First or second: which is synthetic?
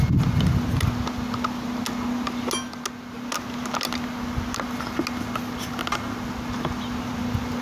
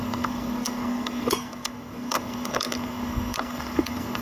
second